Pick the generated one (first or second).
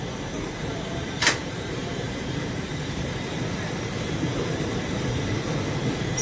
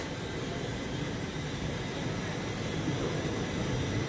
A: first